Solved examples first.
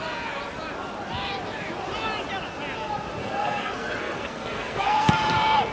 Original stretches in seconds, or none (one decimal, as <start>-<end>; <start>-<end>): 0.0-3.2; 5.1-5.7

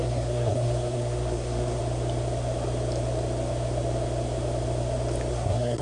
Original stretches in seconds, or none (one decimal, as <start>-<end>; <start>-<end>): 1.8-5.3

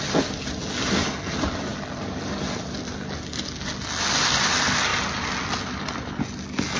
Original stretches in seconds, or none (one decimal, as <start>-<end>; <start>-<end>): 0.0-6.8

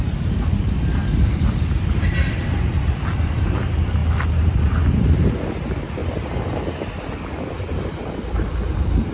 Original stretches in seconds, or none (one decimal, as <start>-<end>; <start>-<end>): 4.0-4.9; 6.0-7.4

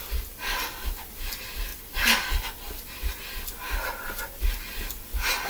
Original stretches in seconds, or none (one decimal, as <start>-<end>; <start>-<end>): 0.0-5.5